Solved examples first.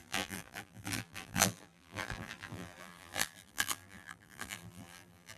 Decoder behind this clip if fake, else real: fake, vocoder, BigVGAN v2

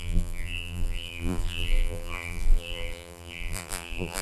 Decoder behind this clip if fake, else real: fake, vocoder, BigVGAN v2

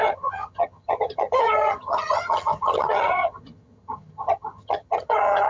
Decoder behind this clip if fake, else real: fake, vocoder, HiFi-GAN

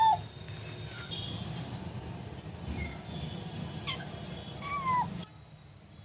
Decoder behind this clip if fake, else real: real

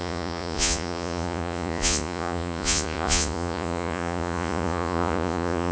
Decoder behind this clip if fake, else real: fake, vocoder, Vocos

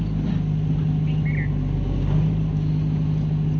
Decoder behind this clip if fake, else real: real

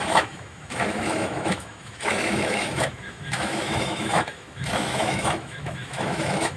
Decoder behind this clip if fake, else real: fake, autoencoder, DAC-VAE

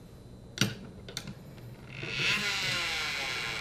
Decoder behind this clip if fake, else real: real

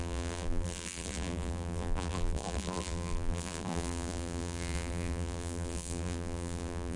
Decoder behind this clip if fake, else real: fake, vocoder, BigVGAN v2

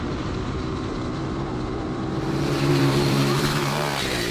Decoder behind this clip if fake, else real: fake, vocoder, BigVGAN v2